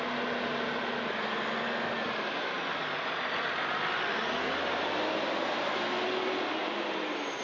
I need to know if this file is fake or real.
real